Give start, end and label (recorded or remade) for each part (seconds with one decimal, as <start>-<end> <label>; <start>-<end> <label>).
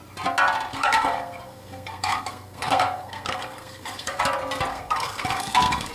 0.0-0.7 recorded; 0.7-4.2 remade; 4.2-4.7 recorded; 4.7-5.9 remade